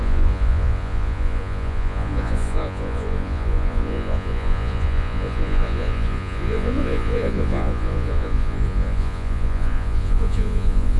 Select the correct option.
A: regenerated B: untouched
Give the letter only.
A